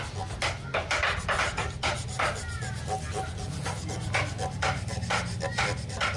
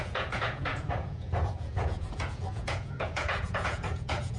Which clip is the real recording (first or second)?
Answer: first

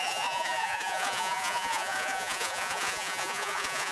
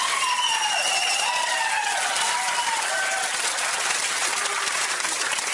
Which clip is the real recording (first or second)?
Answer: second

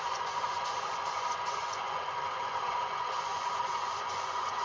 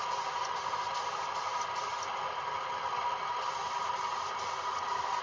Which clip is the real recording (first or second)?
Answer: second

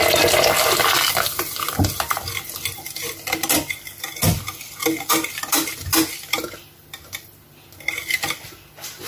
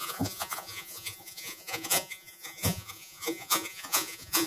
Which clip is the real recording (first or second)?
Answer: first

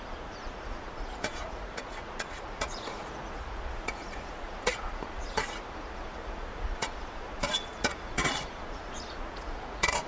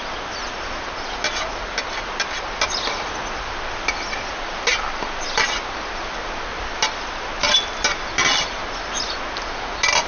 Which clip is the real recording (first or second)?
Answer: second